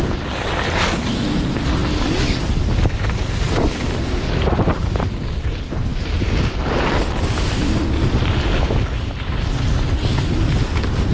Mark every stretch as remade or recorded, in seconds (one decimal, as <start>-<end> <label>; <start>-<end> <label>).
0.0-11.1 recorded